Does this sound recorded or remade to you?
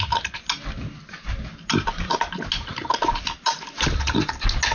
recorded